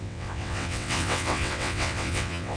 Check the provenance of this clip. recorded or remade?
remade